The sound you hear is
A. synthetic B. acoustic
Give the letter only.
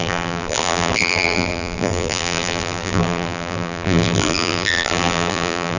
A